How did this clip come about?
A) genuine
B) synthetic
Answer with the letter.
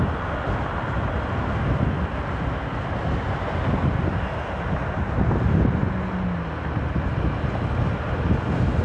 A